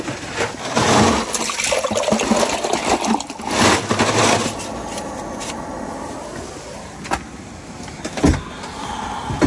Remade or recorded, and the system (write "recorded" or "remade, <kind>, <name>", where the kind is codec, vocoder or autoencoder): recorded